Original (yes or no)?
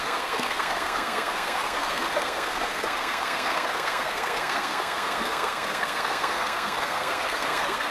no